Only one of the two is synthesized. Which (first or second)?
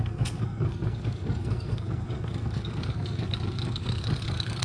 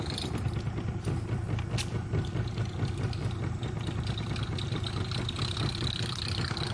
first